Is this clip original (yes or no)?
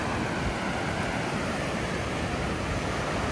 yes